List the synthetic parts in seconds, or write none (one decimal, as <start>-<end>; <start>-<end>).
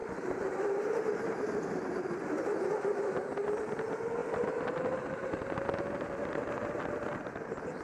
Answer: 0.0-2.1; 4.2-4.8